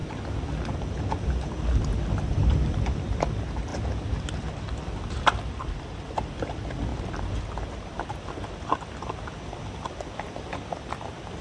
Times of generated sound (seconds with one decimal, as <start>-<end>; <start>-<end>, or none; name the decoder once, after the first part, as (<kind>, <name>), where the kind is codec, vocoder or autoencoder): none